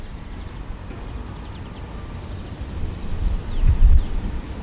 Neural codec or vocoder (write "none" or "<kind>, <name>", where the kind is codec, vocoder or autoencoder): none